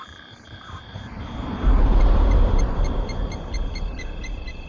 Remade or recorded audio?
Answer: remade